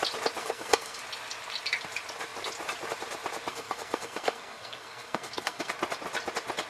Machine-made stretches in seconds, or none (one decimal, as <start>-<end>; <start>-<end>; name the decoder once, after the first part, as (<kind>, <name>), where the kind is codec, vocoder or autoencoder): 0.4-1.0 (codec, SNAC); 3.5-5.7